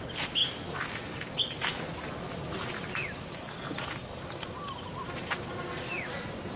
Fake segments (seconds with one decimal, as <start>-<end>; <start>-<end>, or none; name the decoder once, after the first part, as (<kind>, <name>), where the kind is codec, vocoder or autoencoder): none